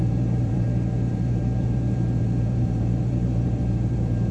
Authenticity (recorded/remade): remade